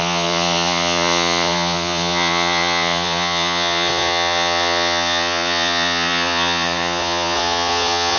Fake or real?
fake